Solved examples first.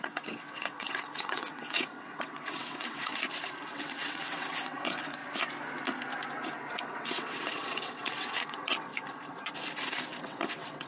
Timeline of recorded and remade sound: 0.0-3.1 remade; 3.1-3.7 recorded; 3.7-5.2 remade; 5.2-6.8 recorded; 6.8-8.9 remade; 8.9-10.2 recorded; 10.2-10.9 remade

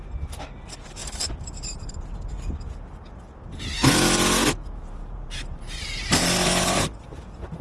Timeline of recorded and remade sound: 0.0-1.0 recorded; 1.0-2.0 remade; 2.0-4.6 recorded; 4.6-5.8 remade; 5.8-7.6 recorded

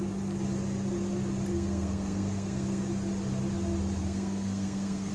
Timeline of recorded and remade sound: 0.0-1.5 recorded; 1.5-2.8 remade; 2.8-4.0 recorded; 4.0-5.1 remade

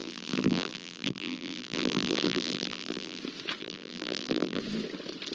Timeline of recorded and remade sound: 0.0-3.2 remade; 3.2-3.6 recorded; 3.6-4.6 remade; 4.6-5.3 recorded

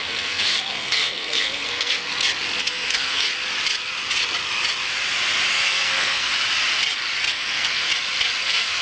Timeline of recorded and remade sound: 0.0-2.1 remade; 2.1-2.6 recorded; 2.6-3.3 remade; 3.3-5.5 recorded; 5.5-6.3 remade; 6.3-7.3 recorded; 7.3-7.9 remade; 7.9-8.4 recorded; 8.4-8.8 remade

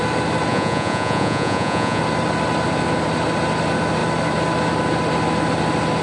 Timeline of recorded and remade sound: 0.0-0.5 recorded; 0.5-2.0 remade; 2.0-6.0 recorded

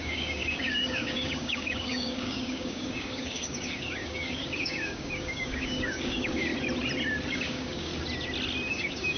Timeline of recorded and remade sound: 0.0-6.5 remade; 6.5-7.3 recorded; 7.3-7.9 remade; 7.9-8.7 recorded; 8.7-9.2 remade

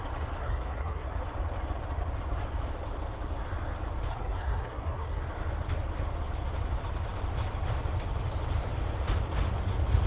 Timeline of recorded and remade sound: 0.0-0.4 recorded; 0.4-1.2 remade; 1.2-4.1 recorded; 4.1-5.2 remade; 5.2-10.1 recorded